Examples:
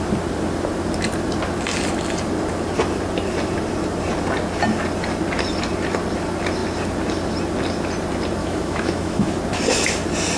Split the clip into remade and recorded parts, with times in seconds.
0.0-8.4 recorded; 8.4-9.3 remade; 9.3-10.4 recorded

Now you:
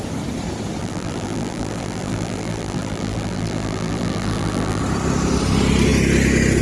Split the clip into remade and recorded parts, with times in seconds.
0.0-0.8 recorded; 0.8-4.8 remade; 4.8-6.6 recorded

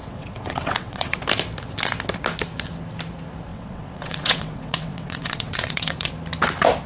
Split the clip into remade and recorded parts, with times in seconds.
0.0-1.2 remade; 1.2-3.5 recorded; 3.5-6.1 remade; 6.1-6.9 recorded

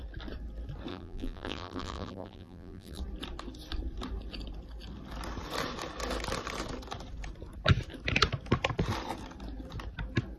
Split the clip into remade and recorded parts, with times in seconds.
0.0-0.9 recorded; 0.9-3.0 remade; 3.0-10.4 recorded

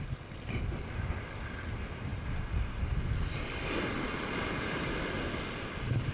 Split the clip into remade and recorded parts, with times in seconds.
0.0-6.1 recorded